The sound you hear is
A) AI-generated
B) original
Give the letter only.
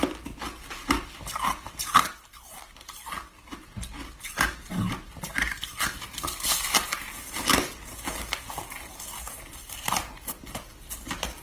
B